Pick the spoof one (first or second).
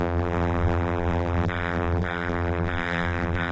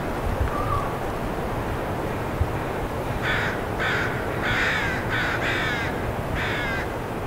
first